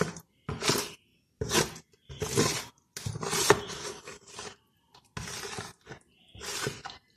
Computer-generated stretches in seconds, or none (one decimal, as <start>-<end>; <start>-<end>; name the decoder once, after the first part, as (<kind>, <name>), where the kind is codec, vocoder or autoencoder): none